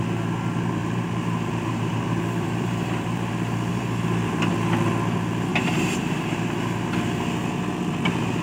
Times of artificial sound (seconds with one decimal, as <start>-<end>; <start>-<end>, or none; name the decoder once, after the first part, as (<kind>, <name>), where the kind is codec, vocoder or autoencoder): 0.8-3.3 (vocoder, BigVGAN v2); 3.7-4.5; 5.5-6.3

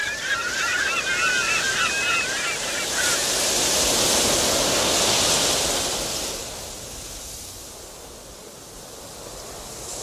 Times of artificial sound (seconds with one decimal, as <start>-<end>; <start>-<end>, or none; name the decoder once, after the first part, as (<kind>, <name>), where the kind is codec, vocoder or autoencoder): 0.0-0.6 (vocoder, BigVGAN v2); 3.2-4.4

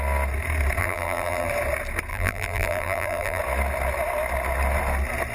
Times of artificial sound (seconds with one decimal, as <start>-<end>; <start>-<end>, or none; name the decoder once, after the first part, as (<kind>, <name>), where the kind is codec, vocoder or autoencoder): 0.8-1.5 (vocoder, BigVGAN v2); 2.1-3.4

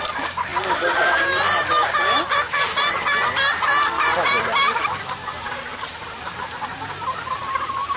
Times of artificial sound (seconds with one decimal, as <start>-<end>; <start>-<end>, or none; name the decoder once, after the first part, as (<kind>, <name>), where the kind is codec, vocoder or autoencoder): 5.7-7.4 (vocoder, BigVGAN v2)

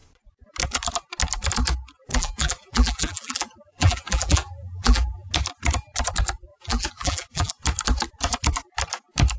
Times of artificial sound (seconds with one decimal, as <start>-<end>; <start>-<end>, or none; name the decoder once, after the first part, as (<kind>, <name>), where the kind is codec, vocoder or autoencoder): 2.1-5.3 (vocoder, BigVGAN v2); 6.5-7.5